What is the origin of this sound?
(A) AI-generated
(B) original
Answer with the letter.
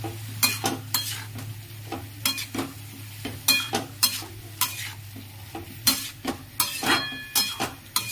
B